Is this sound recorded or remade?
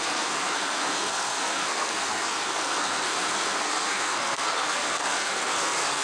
remade